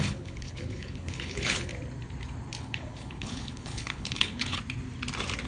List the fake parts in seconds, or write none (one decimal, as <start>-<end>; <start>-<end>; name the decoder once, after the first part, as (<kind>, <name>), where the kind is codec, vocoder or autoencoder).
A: 0.0-1.7 (codec, HILCodec); 2.6-4.6